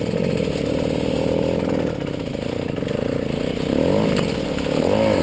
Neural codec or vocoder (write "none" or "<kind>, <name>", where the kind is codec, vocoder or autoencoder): none